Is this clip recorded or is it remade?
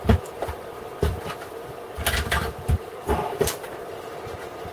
remade